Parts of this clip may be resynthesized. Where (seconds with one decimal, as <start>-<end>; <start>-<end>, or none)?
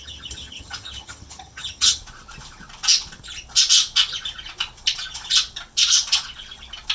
0.0-2.0